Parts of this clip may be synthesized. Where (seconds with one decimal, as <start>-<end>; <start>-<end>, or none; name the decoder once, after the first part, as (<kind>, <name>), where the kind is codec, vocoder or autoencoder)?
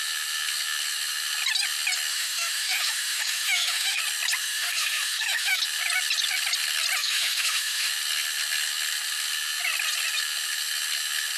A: 2.1-4.0 (autoencoder, DAC-VAE); 4.4-5.6; 7.0-7.9